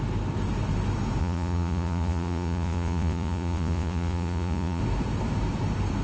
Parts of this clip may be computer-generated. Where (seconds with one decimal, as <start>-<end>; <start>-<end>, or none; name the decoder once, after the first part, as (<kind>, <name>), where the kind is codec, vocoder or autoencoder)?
1.2-4.8 (vocoder, Vocos)